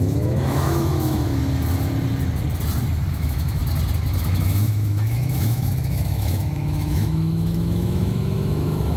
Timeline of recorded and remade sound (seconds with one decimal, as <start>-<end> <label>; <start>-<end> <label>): 0.0-1.4 remade; 1.4-3.1 recorded; 3.1-3.6 remade; 3.6-4.2 recorded; 4.2-9.0 remade